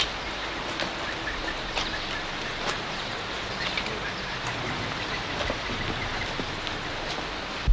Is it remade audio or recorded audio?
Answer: recorded